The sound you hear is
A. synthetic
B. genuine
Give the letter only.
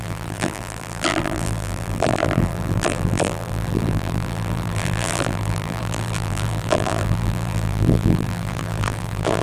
A